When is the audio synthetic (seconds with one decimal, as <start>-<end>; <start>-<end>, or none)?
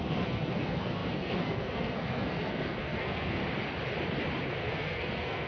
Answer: 0.0-3.4; 4.6-5.5